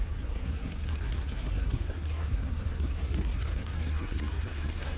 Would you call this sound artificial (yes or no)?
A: yes